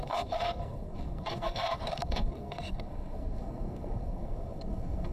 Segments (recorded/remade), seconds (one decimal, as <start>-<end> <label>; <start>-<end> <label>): 0.0-5.1 remade